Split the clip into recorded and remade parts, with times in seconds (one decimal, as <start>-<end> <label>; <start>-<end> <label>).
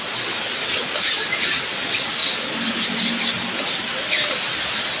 0.0-5.0 recorded